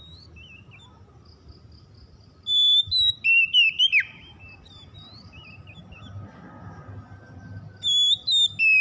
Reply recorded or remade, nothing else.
recorded